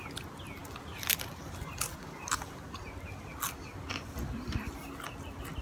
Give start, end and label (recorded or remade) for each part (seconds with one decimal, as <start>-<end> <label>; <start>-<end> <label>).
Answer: 0.0-5.6 recorded